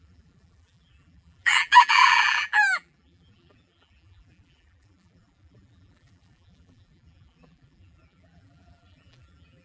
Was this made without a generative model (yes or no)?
no